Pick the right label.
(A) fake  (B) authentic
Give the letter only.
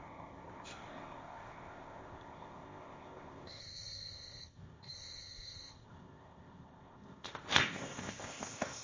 A